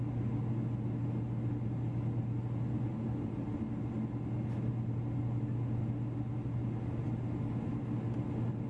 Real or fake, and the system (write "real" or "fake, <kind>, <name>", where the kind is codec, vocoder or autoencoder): real